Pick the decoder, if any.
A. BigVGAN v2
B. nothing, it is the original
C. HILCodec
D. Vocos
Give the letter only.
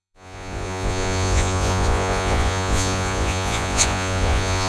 D